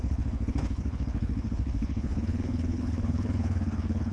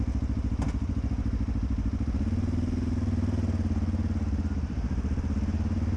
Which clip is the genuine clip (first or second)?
second